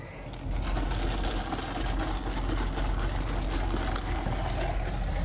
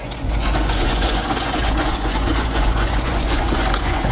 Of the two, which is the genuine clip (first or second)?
first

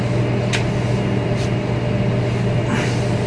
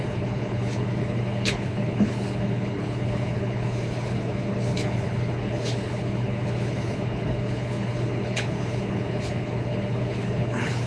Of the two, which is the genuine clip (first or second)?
first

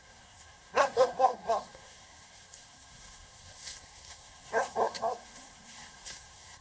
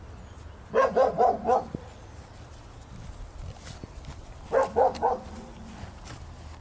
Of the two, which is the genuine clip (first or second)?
second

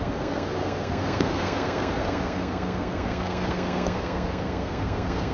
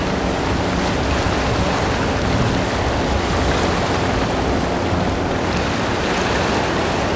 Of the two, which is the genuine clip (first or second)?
second